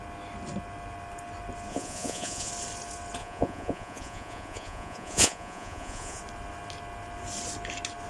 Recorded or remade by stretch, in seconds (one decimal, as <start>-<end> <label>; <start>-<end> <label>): 0.0-1.7 recorded; 1.7-2.5 remade; 2.5-3.2 recorded; 3.2-6.2 remade; 6.2-8.1 recorded